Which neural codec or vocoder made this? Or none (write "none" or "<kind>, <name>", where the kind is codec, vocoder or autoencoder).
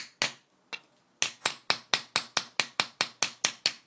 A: none